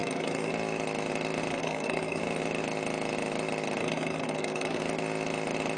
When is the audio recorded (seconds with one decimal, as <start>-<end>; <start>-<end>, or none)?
0.5-1.5; 2.2-3.8; 4.8-5.8